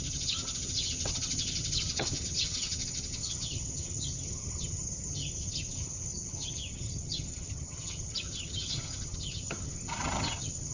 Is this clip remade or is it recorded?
remade